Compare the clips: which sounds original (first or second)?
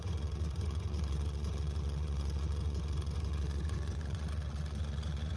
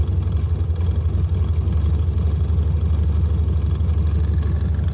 second